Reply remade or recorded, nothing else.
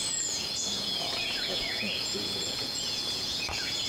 remade